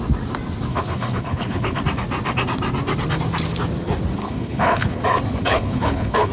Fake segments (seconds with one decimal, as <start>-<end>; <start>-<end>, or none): 0.7-1.8; 4.2-5.0; 5.4-6.3